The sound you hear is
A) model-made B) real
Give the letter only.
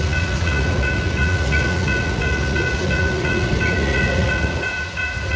A